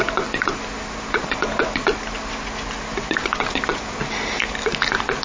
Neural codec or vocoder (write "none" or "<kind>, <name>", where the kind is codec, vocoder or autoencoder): none